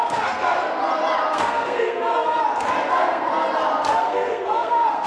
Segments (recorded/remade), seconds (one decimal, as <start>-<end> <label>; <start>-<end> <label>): 0.0-0.8 remade; 0.8-1.3 recorded; 1.3-2.4 remade; 2.4-2.9 recorded; 2.9-3.3 remade; 3.3-4.0 recorded; 4.0-5.1 remade